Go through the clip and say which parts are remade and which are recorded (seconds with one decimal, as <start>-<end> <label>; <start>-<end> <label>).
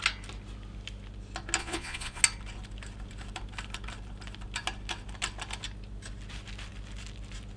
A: 0.0-1.6 recorded; 1.6-2.2 remade; 2.2-7.6 recorded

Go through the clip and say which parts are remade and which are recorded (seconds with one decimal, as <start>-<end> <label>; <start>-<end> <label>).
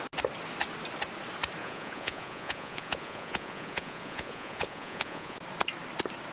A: 0.0-1.6 recorded; 1.6-5.4 remade; 5.4-6.3 recorded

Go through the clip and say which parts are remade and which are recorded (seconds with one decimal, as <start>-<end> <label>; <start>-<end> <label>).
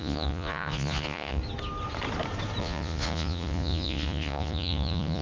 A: 0.0-1.4 remade; 1.4-2.6 recorded; 2.6-5.2 remade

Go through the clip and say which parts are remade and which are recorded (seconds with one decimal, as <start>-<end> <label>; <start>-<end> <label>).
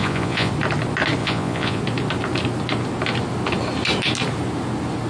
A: 0.0-0.5 remade; 0.5-1.2 recorded; 1.2-1.8 remade; 1.8-5.1 recorded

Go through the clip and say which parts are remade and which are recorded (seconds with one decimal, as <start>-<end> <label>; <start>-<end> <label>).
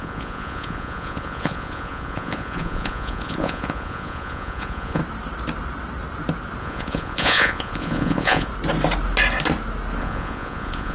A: 0.0-5.0 remade; 5.0-6.6 recorded; 6.6-8.5 remade; 8.5-10.0 recorded; 10.0-10.9 remade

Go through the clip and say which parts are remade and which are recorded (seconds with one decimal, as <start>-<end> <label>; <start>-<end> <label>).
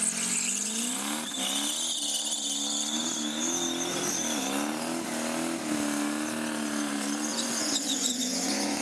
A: 0.0-7.3 recorded; 7.3-8.8 remade